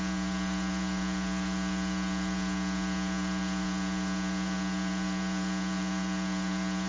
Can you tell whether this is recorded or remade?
remade